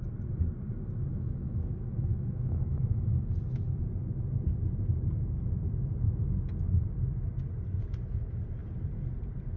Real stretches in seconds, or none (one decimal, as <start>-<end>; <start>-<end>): 0.0-1.1; 2.9-9.6

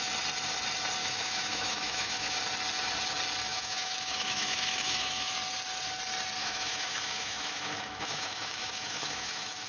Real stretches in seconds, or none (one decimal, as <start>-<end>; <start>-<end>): 0.0-1.0; 2.4-3.5; 5.3-6.4

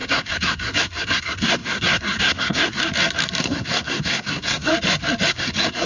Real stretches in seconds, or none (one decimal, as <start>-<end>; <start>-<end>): 2.8-3.4; 4.7-5.3